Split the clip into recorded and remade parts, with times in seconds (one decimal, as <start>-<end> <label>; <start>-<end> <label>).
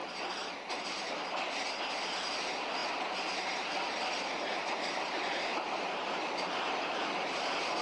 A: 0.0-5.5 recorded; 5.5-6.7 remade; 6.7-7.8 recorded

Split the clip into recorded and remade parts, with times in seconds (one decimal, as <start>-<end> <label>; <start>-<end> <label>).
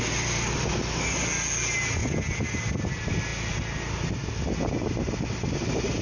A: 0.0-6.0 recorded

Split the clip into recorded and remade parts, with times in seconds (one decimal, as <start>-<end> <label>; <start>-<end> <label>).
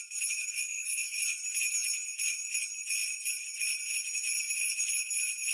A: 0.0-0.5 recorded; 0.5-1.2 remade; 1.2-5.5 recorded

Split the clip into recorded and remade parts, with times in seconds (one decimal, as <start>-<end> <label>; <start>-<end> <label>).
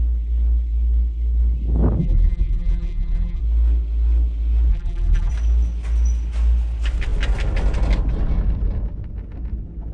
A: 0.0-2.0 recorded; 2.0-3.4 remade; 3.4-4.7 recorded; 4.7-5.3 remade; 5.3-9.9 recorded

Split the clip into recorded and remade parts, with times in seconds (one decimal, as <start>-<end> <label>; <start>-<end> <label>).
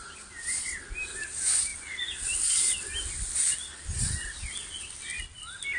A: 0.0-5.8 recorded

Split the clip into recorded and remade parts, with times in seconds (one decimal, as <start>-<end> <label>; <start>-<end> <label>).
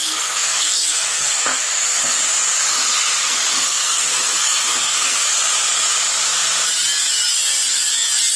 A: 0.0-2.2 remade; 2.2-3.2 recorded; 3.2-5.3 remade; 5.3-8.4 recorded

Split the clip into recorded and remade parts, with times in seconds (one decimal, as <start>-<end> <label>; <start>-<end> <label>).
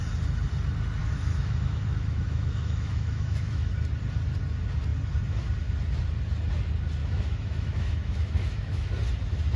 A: 0.0-1.0 recorded; 1.0-3.7 remade; 3.7-7.0 recorded; 7.0-8.9 remade; 8.9-9.6 recorded